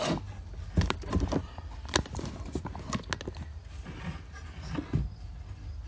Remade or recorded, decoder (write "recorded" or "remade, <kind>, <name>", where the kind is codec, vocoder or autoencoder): recorded